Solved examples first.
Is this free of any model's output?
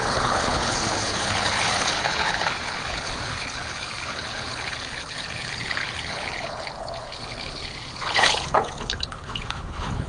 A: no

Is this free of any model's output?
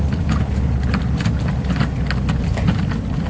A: yes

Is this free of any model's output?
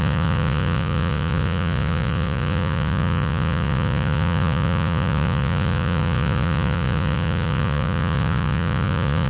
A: no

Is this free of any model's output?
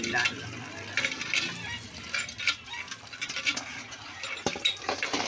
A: yes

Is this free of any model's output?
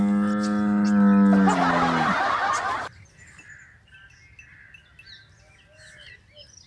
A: yes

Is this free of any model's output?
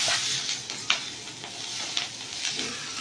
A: yes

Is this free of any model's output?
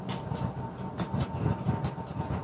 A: yes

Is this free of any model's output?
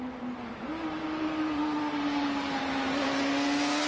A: yes